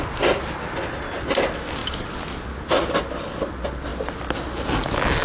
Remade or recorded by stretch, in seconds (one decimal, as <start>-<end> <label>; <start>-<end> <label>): 0.0-5.2 recorded